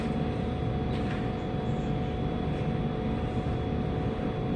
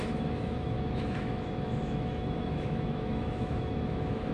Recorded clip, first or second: first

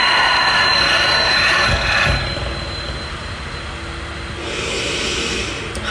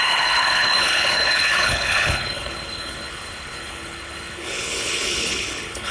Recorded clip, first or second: first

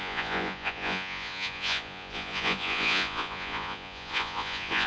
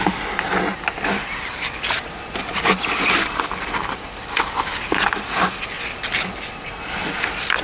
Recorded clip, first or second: second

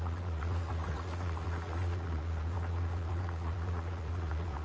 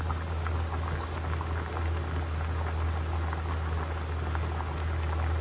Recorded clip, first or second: second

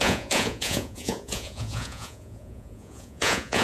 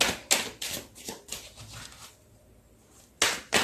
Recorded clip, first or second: second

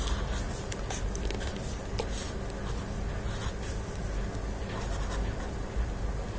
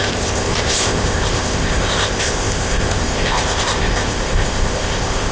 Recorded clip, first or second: first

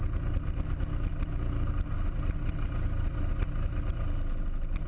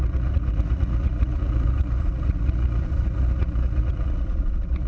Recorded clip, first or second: first